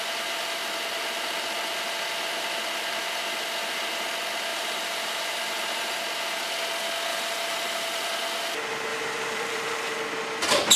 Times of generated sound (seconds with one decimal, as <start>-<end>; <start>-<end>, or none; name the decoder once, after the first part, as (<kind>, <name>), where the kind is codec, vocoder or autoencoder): 4.5-6.0 (vocoder, BigVGAN v2); 7.1-8.1; 8.9-10.0